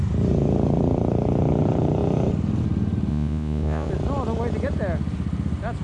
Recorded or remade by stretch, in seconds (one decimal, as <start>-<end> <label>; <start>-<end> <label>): 0.0-3.1 recorded; 3.1-3.9 remade; 3.9-5.8 recorded